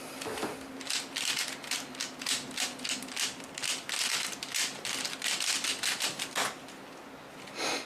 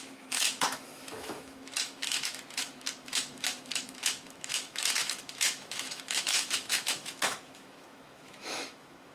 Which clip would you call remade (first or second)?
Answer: second